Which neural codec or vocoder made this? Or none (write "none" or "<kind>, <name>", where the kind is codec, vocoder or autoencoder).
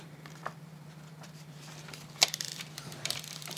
vocoder, BigVGAN v2